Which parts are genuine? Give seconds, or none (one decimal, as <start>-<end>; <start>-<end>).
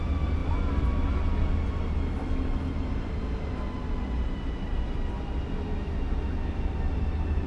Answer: 0.0-7.5